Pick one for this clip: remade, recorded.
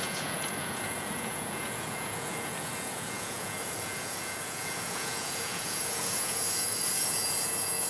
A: remade